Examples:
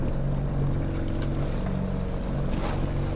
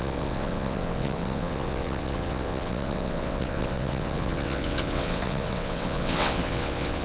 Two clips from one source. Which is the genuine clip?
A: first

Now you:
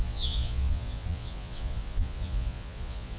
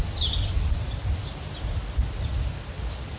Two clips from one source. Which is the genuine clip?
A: second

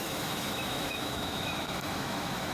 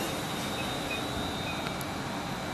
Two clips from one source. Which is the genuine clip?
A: second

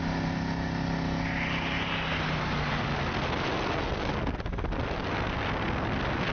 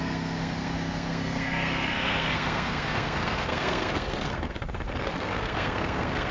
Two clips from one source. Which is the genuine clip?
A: first